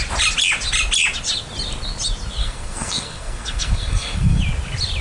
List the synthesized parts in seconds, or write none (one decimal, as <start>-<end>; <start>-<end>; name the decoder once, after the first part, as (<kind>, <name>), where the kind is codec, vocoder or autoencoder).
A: 2.4-4.4 (codec, SNAC)